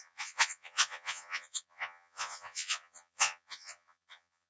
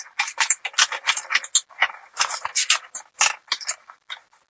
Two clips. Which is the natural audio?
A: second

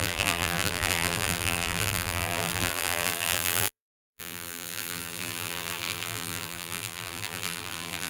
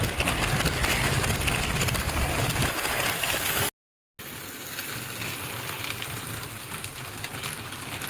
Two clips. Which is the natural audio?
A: second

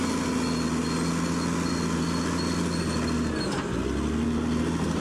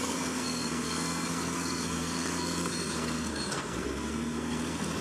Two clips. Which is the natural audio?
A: first